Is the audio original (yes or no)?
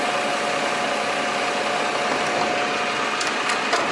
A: yes